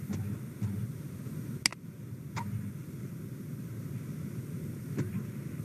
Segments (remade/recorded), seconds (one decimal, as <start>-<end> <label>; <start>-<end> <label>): 0.0-5.6 recorded